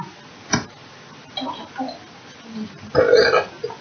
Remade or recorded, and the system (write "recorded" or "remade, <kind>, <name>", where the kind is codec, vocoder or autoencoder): recorded